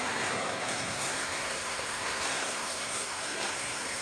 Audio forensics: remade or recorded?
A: remade